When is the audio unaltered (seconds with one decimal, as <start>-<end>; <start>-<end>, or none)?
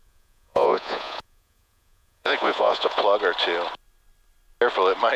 3.0-5.2